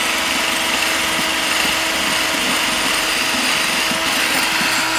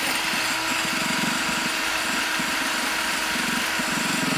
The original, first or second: first